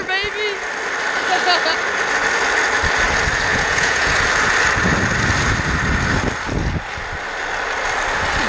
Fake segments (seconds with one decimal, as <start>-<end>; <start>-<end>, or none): 3.5-4.1